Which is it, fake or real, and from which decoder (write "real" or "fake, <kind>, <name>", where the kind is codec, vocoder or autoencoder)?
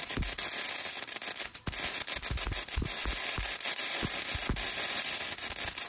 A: real